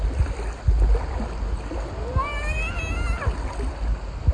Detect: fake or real real